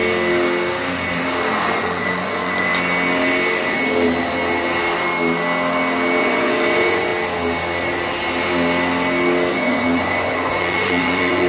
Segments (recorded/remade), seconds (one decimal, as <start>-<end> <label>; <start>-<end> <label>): 0.0-1.7 recorded; 1.7-2.7 remade; 2.7-6.2 recorded; 6.2-7.1 remade; 7.1-9.5 recorded; 9.5-11.5 remade